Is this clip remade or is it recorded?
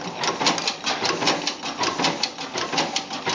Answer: recorded